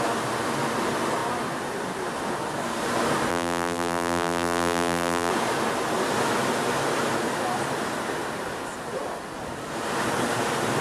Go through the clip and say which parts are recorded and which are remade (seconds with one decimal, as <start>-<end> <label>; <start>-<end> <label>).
0.0-3.3 recorded; 3.3-5.3 remade; 5.3-10.8 recorded